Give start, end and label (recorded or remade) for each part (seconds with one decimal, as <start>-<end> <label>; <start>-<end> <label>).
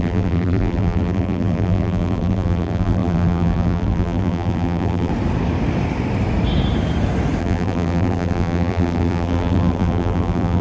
0.0-5.1 remade; 5.1-7.4 recorded; 7.4-10.6 remade